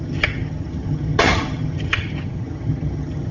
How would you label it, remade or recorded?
remade